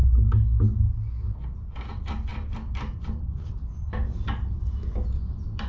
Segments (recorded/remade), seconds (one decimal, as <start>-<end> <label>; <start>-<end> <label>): 0.0-1.9 recorded; 1.9-2.3 remade; 2.3-5.7 recorded